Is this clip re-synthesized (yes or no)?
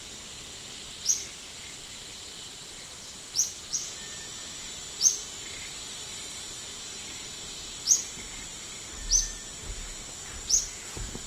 no